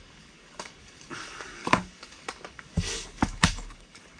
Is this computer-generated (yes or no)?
yes